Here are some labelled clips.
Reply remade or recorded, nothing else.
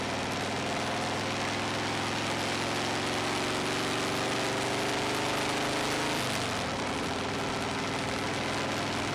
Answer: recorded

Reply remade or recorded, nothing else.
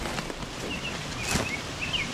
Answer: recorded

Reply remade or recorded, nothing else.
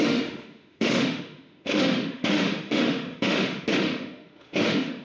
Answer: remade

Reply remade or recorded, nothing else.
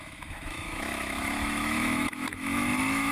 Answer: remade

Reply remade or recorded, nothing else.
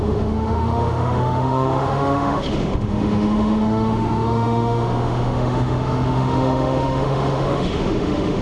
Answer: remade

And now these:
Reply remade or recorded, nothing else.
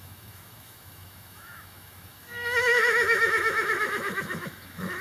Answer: remade